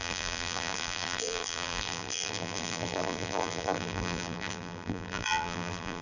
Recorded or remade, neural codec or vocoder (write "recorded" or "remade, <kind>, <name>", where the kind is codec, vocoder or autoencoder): remade, vocoder, BigVGAN v2